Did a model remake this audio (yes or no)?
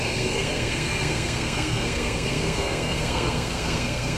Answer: yes